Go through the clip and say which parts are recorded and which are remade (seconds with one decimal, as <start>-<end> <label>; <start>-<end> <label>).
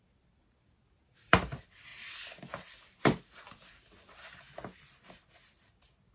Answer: 0.0-6.1 recorded